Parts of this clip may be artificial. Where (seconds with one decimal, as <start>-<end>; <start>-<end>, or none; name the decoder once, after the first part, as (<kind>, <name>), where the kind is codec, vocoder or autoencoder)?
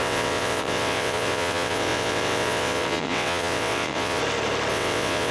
0.0-4.2 (vocoder, WaveNeXt); 4.7-5.3